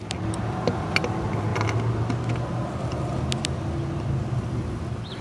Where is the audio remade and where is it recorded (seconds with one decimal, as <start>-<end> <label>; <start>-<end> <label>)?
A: 0.0-5.2 recorded

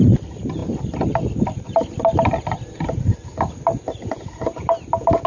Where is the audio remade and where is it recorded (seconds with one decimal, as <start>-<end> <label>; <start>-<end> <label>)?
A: 0.0-5.3 recorded

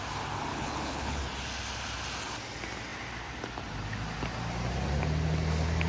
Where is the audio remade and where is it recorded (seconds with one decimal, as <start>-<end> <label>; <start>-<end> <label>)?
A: 0.0-0.5 recorded; 0.5-1.2 remade; 1.2-5.9 recorded

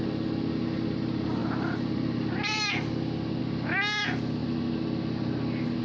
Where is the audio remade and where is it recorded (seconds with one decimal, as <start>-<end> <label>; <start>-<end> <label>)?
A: 0.0-5.8 recorded

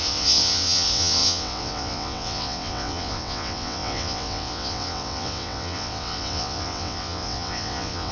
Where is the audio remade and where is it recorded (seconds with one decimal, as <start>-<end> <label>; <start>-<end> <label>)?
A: 0.0-8.1 remade